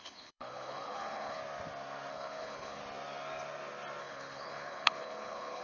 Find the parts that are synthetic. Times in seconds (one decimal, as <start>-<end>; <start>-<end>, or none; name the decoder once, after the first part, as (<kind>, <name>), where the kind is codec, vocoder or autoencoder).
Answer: 0.0-1.4 (codec, HILCodec); 2.1-2.8; 4.0-5.6